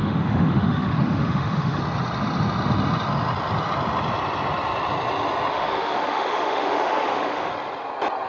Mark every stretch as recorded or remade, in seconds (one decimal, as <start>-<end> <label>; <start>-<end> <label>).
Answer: 0.0-1.8 remade; 1.8-5.5 recorded; 5.5-7.5 remade; 7.5-8.3 recorded

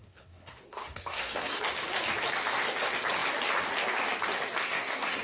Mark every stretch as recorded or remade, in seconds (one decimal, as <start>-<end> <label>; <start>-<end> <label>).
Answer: 0.0-1.6 remade; 1.6-4.6 recorded; 4.6-5.2 remade

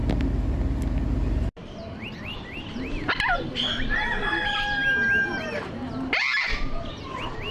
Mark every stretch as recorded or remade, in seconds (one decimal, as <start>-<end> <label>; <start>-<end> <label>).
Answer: 0.0-1.6 recorded; 1.6-2.7 remade; 2.7-4.8 recorded; 4.8-5.7 remade; 5.7-7.5 recorded

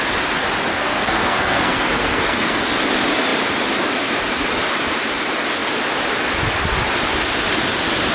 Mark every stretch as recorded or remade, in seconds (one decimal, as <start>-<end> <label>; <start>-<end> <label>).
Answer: 0.0-0.7 recorded; 0.7-2.6 remade; 2.6-8.1 recorded

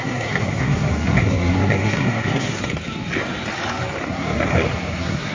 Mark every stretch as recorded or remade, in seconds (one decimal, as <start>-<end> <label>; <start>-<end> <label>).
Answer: 0.0-2.6 remade; 2.6-4.0 recorded; 4.0-5.3 remade

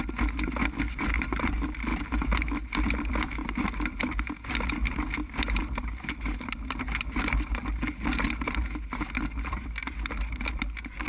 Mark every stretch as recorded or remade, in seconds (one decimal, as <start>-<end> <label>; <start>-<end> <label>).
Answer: 0.0-11.1 recorded

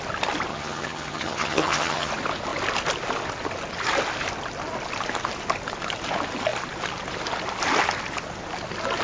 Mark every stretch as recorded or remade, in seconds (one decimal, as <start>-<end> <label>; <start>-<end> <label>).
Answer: 0.0-0.5 recorded; 0.5-2.1 remade; 2.1-9.0 recorded